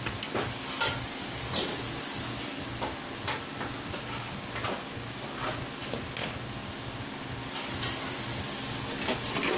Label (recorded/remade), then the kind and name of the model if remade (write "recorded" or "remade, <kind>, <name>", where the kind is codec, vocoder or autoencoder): recorded